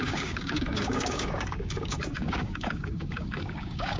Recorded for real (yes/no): no